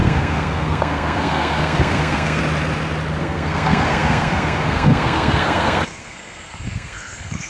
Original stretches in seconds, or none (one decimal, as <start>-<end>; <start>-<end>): 2.4-3.2